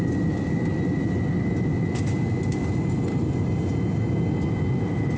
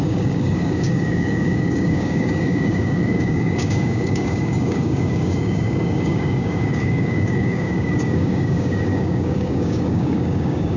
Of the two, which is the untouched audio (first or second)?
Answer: first